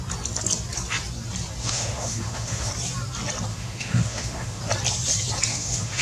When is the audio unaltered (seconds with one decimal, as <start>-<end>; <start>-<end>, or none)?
0.0-1.6; 2.7-3.5; 4.6-5.5